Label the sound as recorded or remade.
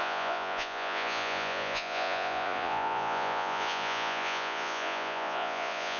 remade